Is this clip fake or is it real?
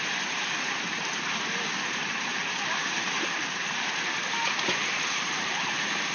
fake